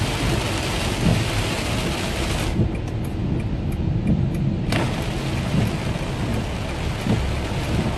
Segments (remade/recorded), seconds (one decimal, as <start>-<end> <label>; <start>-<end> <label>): 0.0-8.0 recorded